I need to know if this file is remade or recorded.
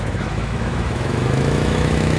remade